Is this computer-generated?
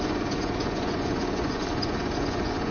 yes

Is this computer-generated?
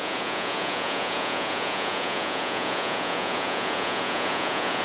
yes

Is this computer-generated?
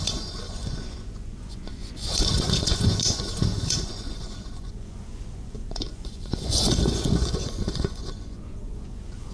yes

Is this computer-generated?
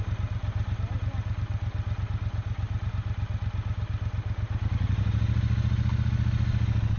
no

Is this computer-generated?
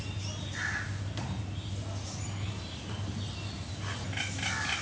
no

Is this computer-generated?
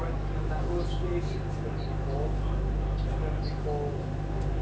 no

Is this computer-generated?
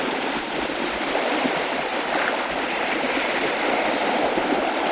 no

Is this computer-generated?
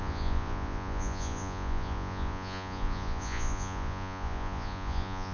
yes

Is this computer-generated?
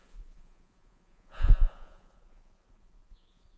yes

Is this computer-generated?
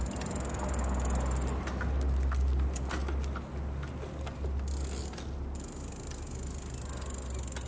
no